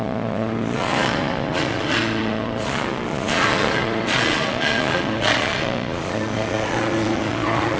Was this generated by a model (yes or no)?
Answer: yes